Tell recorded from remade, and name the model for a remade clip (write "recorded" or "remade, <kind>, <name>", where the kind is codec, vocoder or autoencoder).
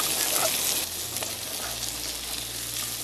recorded